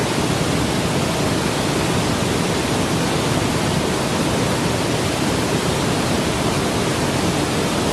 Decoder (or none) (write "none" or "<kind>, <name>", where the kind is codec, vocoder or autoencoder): none